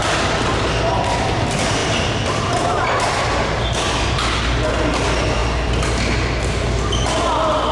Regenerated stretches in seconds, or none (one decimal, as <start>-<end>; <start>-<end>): none